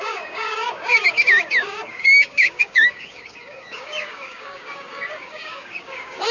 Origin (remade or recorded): remade